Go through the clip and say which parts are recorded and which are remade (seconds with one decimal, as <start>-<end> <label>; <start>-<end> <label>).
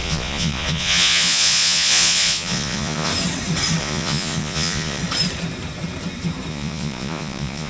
0.0-3.1 remade; 3.1-3.8 recorded; 3.8-5.0 remade; 5.0-6.5 recorded; 6.5-7.7 remade